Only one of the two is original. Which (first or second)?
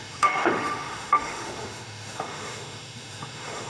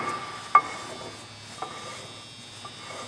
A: second